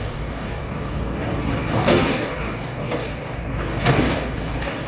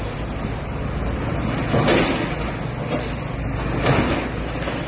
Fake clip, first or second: first